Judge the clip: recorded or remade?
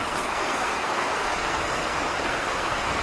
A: remade